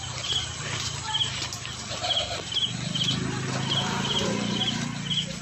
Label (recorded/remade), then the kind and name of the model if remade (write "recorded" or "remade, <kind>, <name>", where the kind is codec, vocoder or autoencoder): recorded